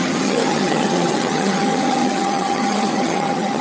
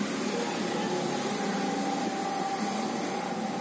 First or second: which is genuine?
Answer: second